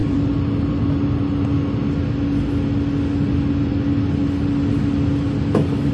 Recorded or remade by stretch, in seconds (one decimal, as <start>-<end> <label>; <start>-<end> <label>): 0.0-0.7 remade; 0.7-5.9 recorded